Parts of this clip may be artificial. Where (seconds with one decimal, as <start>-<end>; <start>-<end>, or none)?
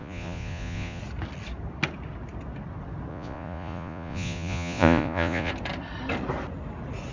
0.0-1.0; 3.1-5.5